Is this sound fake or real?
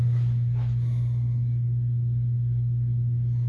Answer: real